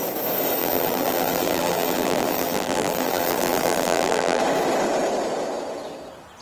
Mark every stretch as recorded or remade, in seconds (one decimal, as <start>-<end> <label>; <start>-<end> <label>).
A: 0.0-0.6 recorded; 0.6-4.4 remade; 4.4-6.4 recorded